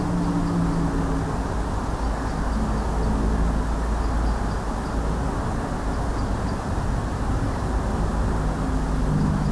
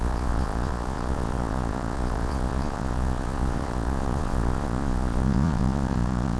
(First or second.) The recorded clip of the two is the first